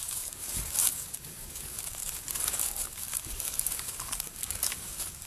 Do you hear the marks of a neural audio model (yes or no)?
yes